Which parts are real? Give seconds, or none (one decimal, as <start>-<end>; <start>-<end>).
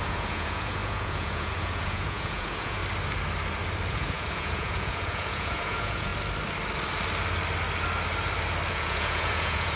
2.8-3.9; 6.1-8.7